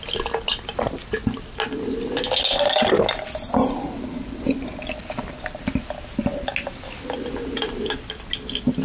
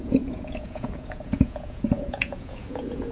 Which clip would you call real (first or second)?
first